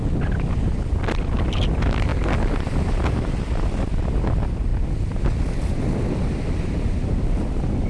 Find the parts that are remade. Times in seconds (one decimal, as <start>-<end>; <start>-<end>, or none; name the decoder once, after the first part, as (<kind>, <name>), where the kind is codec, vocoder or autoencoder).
none